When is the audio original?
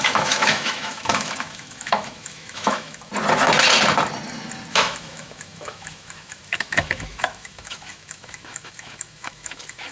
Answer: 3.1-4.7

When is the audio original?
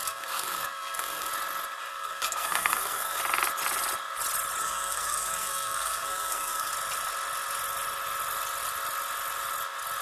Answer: 1.3-1.9; 3.2-4.6; 6.7-10.0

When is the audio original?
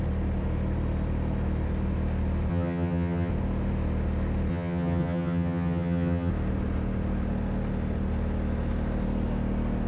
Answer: 0.0-2.5; 3.3-4.5; 6.3-9.9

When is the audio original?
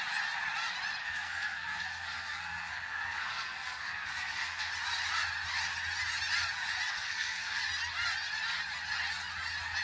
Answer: 0.0-1.0; 4.7-6.9; 7.6-9.8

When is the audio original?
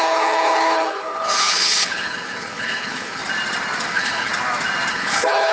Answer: 3.2-3.9; 4.3-4.9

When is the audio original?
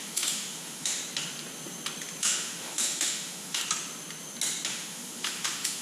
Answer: 1.0-2.2; 3.6-4.7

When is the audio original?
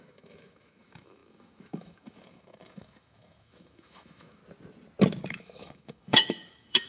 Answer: 4.4-5.3